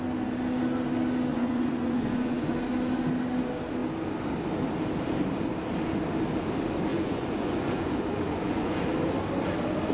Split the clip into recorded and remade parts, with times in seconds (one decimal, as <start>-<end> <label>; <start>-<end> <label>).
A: 0.0-1.3 recorded; 1.3-2.6 remade; 2.6-6.9 recorded; 6.9-8.8 remade; 8.8-9.9 recorded